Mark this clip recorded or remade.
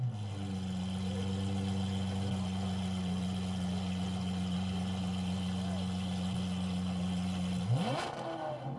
recorded